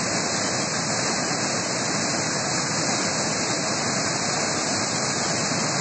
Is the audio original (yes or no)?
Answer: yes